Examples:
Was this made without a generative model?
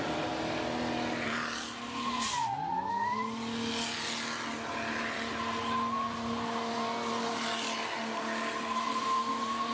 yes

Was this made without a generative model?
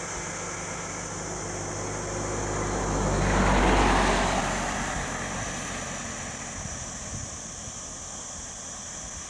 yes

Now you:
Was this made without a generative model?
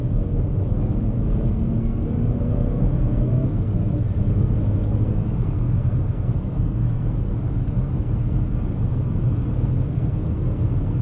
no